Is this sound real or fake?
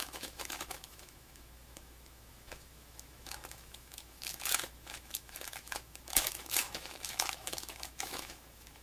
fake